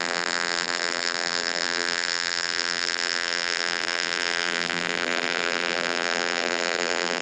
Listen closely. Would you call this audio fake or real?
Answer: fake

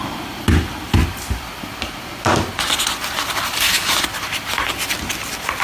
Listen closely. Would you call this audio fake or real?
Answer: real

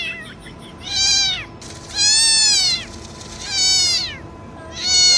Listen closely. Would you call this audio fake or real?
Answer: real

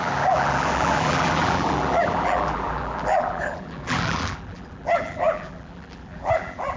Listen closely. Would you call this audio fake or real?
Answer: fake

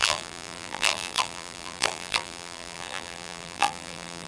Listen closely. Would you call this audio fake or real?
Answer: fake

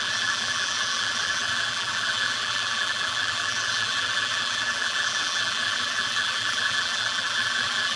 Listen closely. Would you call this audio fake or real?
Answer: fake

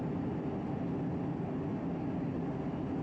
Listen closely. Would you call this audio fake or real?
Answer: real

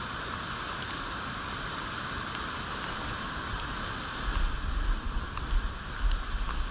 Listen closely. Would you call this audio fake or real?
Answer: real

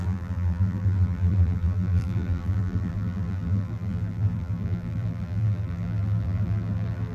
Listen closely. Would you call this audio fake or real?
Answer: fake